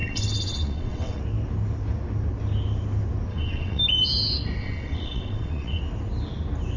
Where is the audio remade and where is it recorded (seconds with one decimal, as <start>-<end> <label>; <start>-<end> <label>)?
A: 0.0-1.2 remade; 1.2-3.3 recorded; 3.3-3.8 remade; 3.8-4.6 recorded; 4.6-5.8 remade; 5.8-6.8 recorded